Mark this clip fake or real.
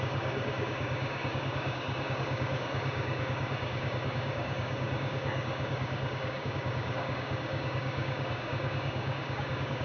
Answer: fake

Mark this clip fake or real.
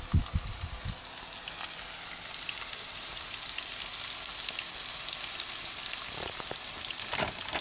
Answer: real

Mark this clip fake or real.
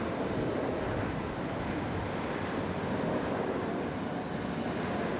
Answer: real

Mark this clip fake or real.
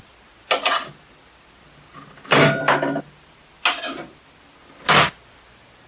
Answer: real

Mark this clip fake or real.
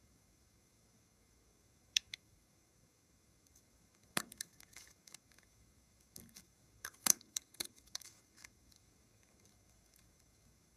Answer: fake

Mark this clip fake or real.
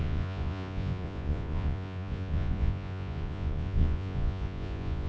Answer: fake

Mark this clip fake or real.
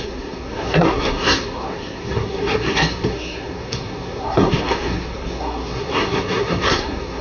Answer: fake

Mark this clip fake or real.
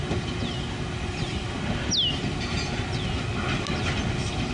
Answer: real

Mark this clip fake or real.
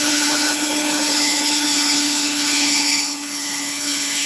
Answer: fake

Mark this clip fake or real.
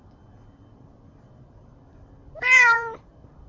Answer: fake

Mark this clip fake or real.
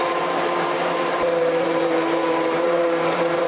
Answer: fake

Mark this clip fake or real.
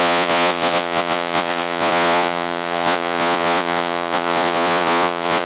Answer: fake